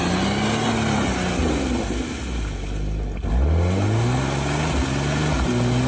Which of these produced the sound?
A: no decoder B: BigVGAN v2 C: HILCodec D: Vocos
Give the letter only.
A